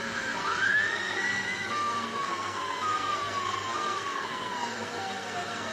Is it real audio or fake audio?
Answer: fake